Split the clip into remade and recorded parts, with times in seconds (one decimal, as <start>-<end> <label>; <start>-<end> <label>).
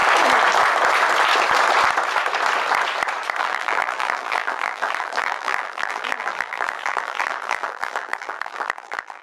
0.0-3.4 recorded; 3.4-9.2 remade